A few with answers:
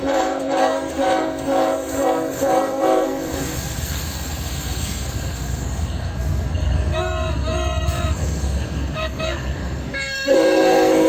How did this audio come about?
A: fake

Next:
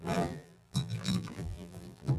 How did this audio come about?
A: fake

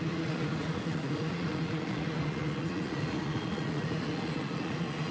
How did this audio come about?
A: fake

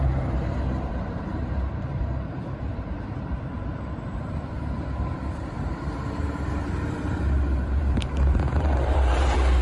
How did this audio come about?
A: fake